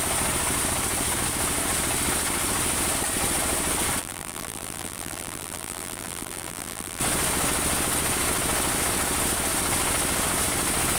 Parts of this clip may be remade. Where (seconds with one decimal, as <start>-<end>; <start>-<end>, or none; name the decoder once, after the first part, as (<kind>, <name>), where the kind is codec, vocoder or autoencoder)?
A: 4.0-7.0 (vocoder, BigVGAN v2)